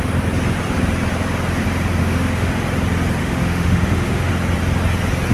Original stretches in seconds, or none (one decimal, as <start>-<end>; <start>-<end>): 0.0-2.0; 2.5-3.2; 4.3-5.3